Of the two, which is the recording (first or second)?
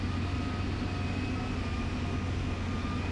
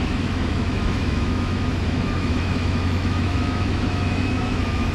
first